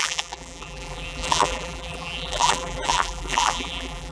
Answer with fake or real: fake